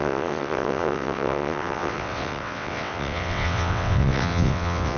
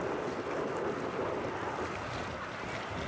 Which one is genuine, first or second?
second